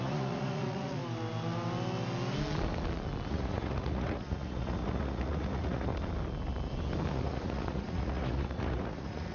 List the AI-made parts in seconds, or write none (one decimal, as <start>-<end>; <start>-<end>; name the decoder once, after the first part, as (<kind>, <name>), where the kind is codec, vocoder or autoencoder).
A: 0.0-1.0 (vocoder, Vocos); 3.3-5.9; 7.1-9.3